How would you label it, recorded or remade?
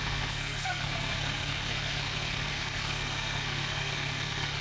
remade